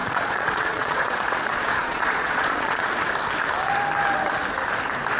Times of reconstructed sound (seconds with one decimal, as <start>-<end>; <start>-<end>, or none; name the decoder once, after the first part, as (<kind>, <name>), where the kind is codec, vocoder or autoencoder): 0.0-3.1 (vocoder, Vocos)